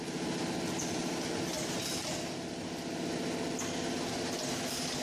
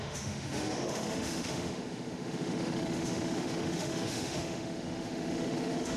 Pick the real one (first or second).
first